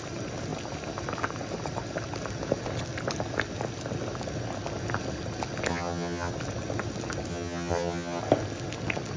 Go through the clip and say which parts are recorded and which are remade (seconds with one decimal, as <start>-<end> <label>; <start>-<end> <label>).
0.0-5.7 recorded; 5.7-6.3 remade; 6.3-7.3 recorded; 7.3-8.2 remade; 8.2-9.2 recorded